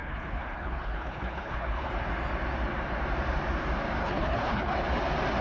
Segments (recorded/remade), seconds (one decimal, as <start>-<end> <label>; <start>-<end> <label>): 0.0-1.9 remade; 1.9-4.0 recorded; 4.0-4.8 remade; 4.8-5.4 recorded

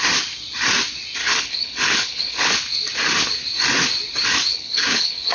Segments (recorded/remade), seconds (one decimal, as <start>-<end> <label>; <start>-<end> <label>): 0.0-1.2 recorded; 1.2-2.5 remade; 2.5-4.5 recorded; 4.5-5.3 remade

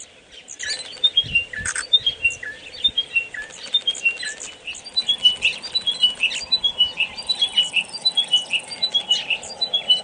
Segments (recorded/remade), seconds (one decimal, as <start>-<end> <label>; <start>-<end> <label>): 0.0-10.0 recorded